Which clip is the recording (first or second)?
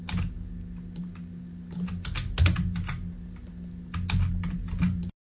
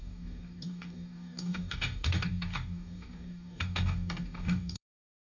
first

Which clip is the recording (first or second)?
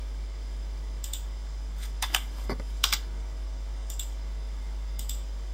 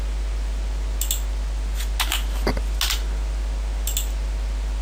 second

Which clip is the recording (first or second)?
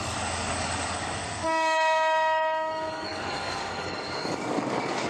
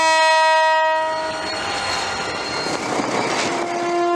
second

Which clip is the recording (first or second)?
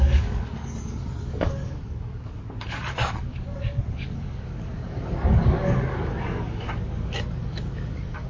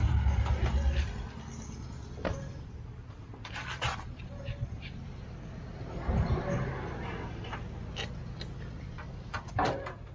second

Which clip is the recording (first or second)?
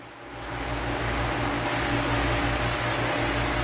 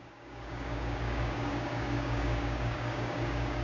first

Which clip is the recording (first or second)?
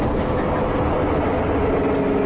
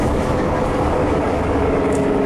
first